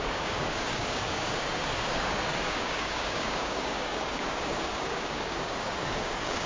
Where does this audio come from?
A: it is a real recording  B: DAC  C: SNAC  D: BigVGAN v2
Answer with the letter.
B